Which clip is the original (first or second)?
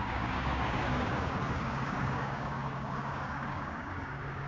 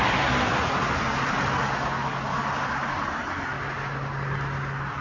second